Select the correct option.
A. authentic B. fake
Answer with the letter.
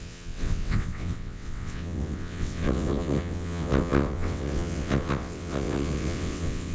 B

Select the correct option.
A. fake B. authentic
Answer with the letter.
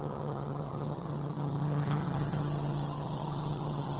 A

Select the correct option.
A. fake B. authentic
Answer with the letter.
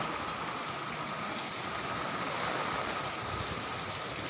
B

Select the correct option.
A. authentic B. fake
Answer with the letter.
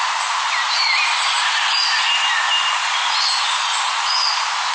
A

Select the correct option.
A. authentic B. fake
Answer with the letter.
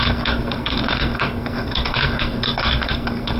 B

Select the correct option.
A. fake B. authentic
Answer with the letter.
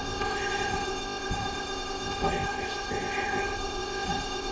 A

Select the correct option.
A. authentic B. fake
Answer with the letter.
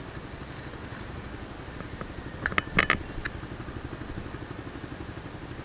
A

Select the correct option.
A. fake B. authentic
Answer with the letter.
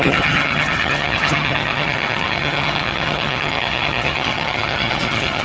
A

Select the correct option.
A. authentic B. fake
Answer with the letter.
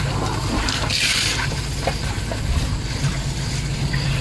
B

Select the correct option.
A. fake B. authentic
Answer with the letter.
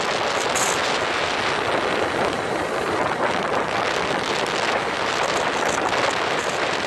B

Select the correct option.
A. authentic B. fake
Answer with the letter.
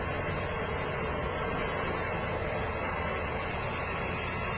A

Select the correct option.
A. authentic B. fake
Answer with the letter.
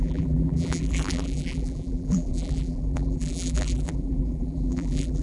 B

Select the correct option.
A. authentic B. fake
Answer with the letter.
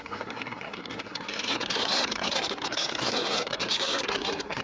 B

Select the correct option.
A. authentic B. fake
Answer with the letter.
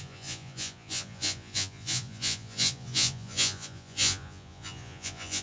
B